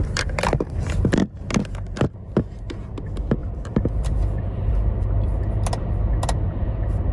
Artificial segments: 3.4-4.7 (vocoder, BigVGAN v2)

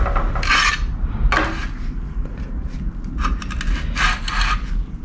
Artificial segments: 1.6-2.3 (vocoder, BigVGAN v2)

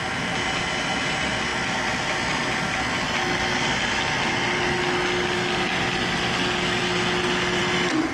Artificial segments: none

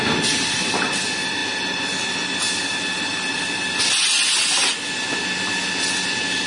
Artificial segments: none

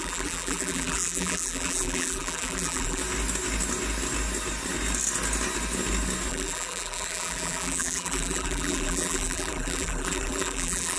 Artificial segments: 0.0-3.0 (vocoder, BigVGAN v2); 6.3-11.0

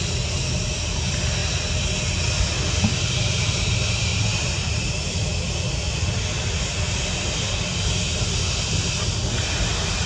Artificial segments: 4.1-4.9 (vocoder, BigVGAN v2)